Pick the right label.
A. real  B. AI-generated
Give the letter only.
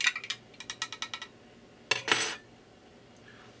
A